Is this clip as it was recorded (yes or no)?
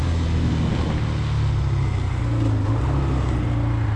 yes